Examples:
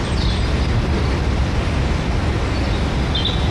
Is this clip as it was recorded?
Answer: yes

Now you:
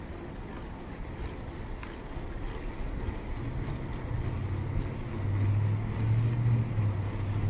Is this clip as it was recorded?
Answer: yes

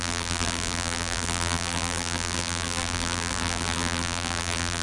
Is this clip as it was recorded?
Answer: no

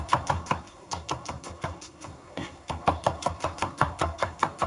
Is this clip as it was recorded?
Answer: no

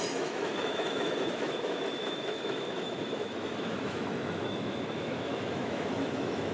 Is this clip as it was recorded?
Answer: no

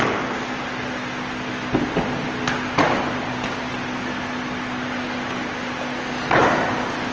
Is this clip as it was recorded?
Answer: yes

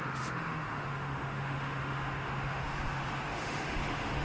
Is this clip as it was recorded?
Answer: no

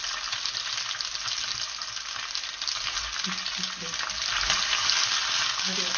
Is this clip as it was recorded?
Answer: yes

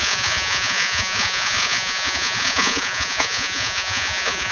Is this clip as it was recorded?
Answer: no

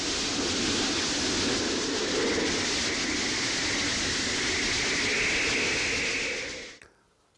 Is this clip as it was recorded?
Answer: yes